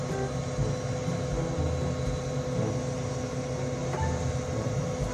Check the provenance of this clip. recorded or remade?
recorded